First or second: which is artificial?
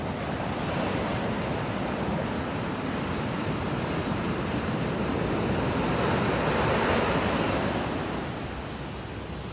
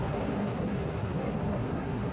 second